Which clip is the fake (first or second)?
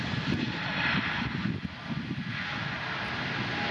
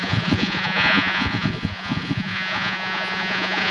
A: second